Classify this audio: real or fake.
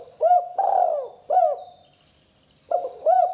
real